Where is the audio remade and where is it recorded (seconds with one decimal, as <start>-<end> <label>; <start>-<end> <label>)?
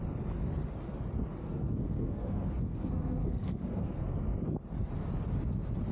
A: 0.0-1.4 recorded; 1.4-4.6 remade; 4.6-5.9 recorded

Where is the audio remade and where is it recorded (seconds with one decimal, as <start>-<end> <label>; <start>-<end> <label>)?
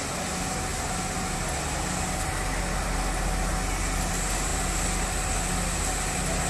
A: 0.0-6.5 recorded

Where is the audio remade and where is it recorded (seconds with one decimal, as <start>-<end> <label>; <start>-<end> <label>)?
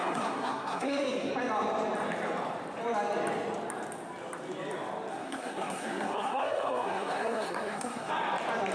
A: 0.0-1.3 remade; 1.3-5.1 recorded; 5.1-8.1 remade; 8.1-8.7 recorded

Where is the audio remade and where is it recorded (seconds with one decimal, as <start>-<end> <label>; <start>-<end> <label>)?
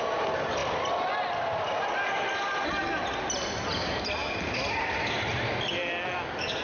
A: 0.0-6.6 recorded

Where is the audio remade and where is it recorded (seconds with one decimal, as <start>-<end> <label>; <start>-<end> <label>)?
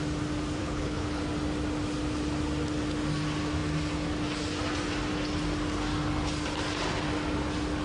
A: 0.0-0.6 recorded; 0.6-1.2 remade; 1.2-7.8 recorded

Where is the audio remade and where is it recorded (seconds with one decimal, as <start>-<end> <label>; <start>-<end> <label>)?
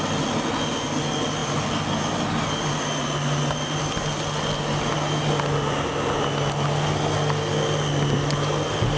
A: 0.0-9.0 recorded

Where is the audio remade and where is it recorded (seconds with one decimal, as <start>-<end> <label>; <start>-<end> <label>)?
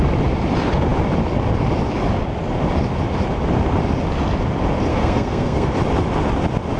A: 0.0-4.9 recorded; 4.9-5.7 remade; 5.7-6.8 recorded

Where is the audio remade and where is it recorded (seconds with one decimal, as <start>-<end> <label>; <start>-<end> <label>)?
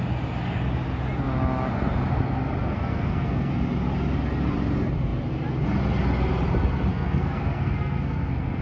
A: 0.0-2.6 recorded; 2.6-3.5 remade; 3.5-6.9 recorded; 6.9-8.6 remade